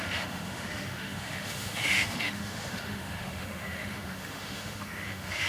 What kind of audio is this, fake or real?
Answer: fake